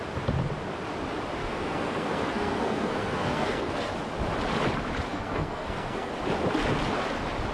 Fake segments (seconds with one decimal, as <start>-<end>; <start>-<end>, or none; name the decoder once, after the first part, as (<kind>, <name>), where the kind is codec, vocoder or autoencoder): 1.4-3.9 (codec, SNAC); 5.1-6.1